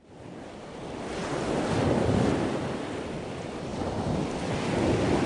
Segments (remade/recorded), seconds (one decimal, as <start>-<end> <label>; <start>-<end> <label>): 0.0-5.3 recorded